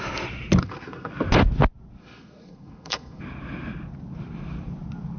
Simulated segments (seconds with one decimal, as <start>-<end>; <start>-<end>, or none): 0.6-1.1; 2.0-3.2